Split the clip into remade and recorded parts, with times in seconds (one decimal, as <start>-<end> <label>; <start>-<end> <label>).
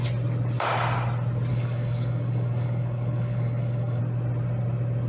0.0-1.5 recorded; 1.5-4.0 remade; 4.0-5.1 recorded